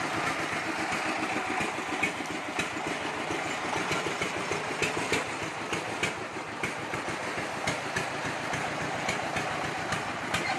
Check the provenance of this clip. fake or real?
real